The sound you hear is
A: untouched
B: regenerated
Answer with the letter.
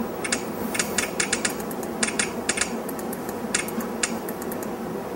A